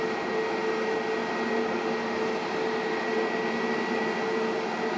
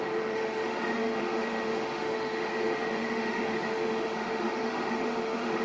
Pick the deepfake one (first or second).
second